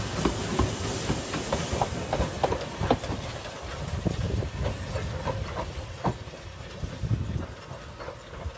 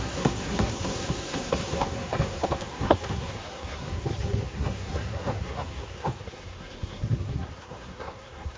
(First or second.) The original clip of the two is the first